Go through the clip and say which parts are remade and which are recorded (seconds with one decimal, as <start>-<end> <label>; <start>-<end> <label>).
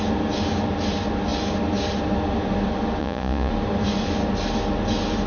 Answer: 0.0-3.0 recorded; 3.0-3.5 remade; 3.5-5.3 recorded